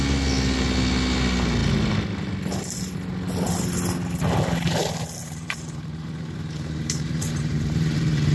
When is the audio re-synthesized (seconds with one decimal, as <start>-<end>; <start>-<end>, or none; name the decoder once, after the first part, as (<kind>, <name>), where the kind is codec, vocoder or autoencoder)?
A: 5.2-8.3 (vocoder, BigVGAN v2)